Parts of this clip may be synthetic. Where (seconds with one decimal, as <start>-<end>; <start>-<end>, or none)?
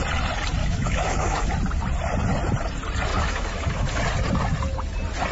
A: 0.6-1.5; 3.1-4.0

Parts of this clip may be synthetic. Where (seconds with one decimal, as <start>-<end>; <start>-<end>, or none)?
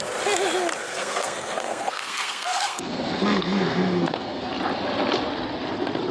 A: 0.8-4.5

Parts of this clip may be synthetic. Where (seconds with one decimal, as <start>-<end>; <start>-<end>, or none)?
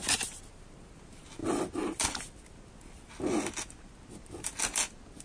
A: none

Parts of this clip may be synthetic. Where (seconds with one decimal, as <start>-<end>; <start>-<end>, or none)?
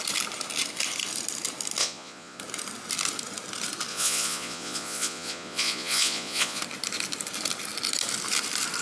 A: 1.8-2.4; 3.9-6.6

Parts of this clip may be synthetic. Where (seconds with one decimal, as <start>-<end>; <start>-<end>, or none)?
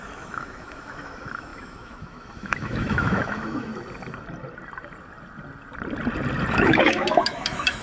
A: 0.0-3.7; 6.5-7.8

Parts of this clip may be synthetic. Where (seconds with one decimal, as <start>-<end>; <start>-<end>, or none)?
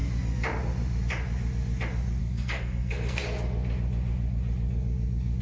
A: 2.2-3.2